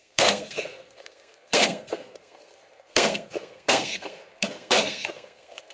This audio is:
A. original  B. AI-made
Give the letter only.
B